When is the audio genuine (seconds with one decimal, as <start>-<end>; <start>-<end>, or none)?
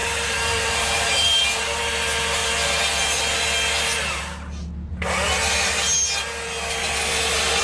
1.9-7.6